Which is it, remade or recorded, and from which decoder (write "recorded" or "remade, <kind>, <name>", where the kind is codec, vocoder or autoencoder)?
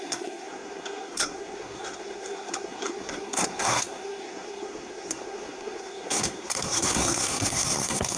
remade, codec, SNAC